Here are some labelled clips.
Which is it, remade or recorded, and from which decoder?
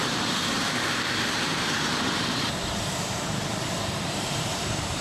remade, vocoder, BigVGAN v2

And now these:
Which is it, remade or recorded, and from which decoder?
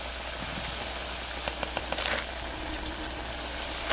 recorded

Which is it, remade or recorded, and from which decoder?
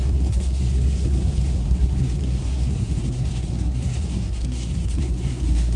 remade, codec, SNAC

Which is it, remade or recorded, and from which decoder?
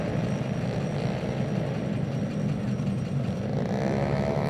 recorded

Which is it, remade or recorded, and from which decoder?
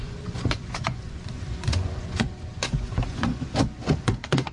remade, vocoder, Vocos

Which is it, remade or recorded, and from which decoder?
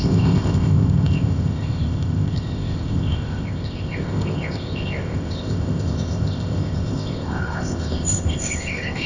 remade, codec, ZipCodec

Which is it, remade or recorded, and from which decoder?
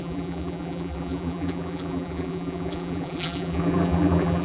remade, vocoder, BigVGAN v2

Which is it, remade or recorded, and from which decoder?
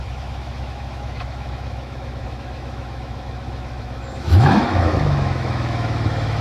remade, autoencoder, DAC-VAE